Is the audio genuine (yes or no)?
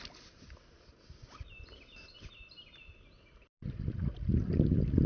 yes